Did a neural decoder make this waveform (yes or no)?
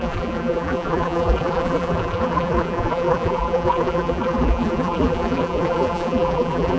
yes